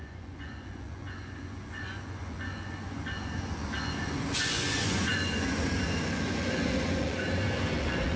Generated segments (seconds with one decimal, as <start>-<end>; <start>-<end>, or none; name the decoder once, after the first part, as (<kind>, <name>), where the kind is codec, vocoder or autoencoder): 0.0-8.2 (vocoder, Vocos)